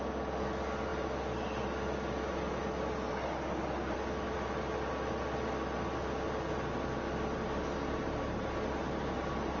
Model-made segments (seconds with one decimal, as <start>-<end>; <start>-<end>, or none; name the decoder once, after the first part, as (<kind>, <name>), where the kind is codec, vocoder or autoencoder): none